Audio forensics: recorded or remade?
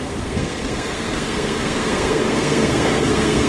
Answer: remade